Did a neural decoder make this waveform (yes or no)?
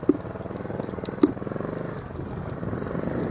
no